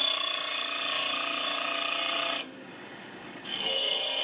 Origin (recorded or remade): remade